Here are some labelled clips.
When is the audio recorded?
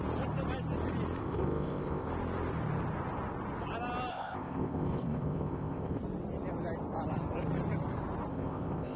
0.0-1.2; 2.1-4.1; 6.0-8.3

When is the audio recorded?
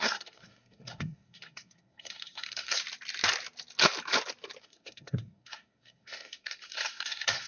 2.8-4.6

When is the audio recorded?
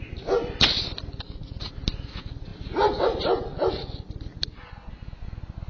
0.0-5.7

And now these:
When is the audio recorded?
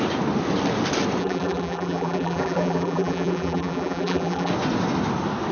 0.0-1.2; 4.5-5.5